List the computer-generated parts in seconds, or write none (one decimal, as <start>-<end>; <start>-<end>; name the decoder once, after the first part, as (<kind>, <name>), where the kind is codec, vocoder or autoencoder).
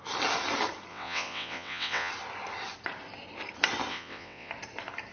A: 0.9-2.1 (vocoder, WaveNeXt); 3.9-4.5